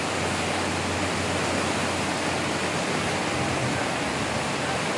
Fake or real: real